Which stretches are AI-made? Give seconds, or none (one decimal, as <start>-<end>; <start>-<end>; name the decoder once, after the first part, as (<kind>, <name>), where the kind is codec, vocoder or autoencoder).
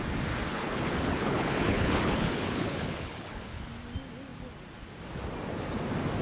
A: 0.5-3.7 (codec, HILCodec)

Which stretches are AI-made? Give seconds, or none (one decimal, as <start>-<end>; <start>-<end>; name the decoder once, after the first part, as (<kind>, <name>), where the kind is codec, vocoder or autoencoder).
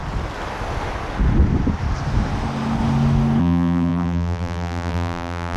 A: 3.4-5.6 (vocoder, BigVGAN v2)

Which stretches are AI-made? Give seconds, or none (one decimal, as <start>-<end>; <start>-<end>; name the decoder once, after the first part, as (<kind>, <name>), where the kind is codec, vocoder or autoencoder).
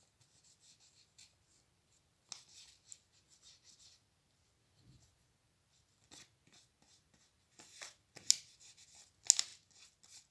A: none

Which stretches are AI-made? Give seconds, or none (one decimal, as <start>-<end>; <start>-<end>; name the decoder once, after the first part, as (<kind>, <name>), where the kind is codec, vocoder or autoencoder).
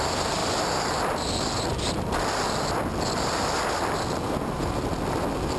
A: none